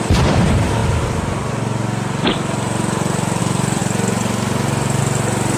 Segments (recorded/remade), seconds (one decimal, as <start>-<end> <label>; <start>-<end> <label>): 0.0-0.8 remade; 0.8-3.4 recorded; 3.4-3.8 remade; 3.8-5.0 recorded; 5.0-5.6 remade